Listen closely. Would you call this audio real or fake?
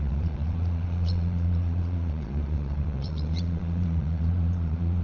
fake